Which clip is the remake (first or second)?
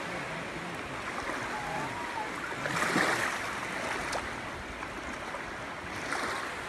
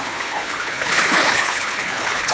second